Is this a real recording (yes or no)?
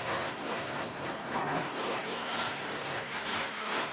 no